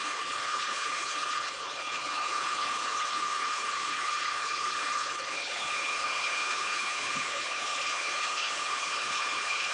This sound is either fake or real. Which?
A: fake